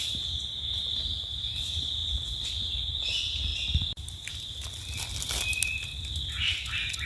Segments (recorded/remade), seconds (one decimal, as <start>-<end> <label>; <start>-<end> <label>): 0.0-0.9 recorded; 0.9-1.6 remade; 1.6-7.1 recorded